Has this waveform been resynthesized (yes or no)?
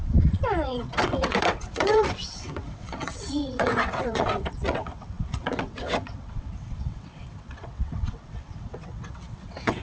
yes